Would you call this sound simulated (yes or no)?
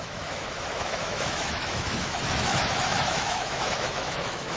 yes